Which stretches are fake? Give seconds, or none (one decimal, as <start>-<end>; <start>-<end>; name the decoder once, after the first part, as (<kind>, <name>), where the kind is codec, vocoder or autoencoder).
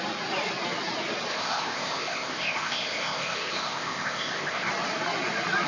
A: 1.3-4.7 (codec, ZipCodec)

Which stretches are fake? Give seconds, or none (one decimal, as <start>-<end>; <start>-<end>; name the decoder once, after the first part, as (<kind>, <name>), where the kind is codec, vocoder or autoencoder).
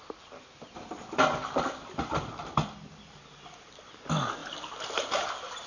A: none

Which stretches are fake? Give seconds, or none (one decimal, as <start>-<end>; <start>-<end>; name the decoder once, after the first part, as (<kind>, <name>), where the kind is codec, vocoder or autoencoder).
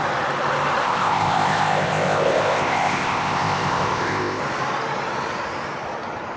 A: 0.8-4.4 (codec, ZipCodec)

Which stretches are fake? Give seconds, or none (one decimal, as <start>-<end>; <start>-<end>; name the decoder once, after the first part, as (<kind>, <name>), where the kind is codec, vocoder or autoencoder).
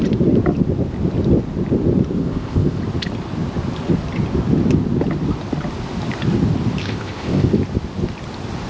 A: 2.2-2.8 (codec, ZipCodec); 6.8-7.5